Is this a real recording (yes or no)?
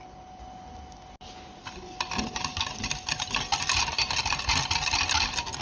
yes